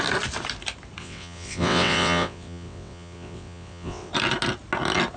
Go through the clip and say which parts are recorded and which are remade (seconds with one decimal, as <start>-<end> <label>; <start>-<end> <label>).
0.0-1.0 recorded; 1.0-4.1 remade; 4.1-5.2 recorded